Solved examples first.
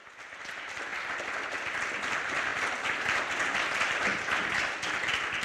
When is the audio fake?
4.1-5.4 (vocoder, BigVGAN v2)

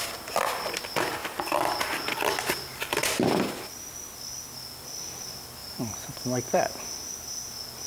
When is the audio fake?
5.6-6.8 (vocoder, BigVGAN v2)

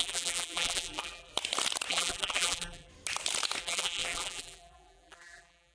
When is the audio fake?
0.0-1.3 (vocoder, BigVGAN v2); 1.9-2.9; 3.6-5.7